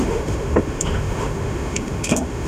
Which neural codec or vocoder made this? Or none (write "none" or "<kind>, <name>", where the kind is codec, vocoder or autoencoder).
autoencoder, DAC-VAE